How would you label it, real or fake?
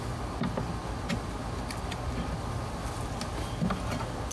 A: real